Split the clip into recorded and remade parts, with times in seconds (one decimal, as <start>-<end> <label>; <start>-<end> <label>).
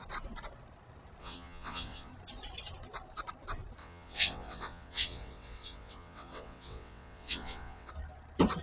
0.0-1.2 recorded; 1.2-2.1 remade; 2.1-3.8 recorded; 3.8-7.9 remade; 7.9-8.6 recorded